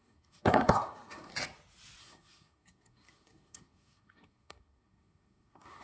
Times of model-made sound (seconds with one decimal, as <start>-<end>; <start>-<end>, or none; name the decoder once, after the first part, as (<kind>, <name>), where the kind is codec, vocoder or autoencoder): 0.0-1.3 (codec, SNAC); 2.0-5.8